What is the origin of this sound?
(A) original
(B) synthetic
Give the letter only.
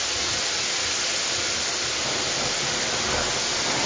A